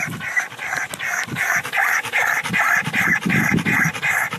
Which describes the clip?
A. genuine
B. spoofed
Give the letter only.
A